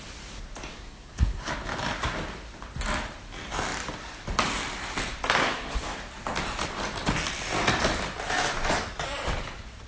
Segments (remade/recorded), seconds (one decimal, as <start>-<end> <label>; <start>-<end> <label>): 0.0-0.7 recorded; 0.7-1.5 remade; 1.5-5.4 recorded; 5.4-6.0 remade; 6.0-9.9 recorded